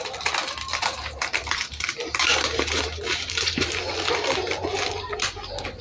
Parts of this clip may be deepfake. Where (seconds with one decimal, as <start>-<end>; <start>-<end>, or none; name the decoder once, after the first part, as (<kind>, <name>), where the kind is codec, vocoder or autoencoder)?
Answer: 0.7-3.7 (vocoder, BigVGAN v2)